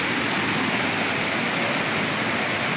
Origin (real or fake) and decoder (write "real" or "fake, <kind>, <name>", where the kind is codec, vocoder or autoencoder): real